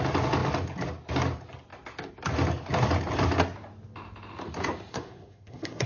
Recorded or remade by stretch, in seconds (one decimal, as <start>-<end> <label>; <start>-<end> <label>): 0.0-4.9 recorded; 4.9-5.9 remade